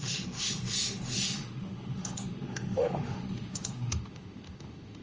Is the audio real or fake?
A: fake